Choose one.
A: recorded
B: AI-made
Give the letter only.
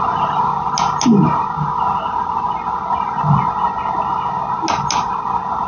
A